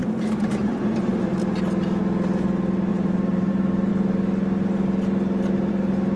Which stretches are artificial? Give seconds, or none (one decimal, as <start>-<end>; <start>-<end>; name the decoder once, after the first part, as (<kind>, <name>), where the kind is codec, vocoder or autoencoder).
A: 0.0-0.7 (vocoder, BigVGAN v2); 2.9-3.5